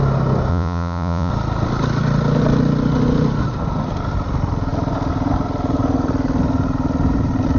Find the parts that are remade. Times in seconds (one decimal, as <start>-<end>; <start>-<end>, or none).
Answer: 0.5-1.3